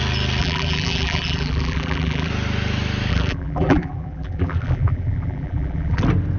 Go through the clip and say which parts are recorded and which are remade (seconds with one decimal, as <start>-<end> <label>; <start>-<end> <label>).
0.0-0.4 recorded; 0.4-2.3 remade; 2.3-3.1 recorded; 3.1-6.0 remade; 6.0-6.4 recorded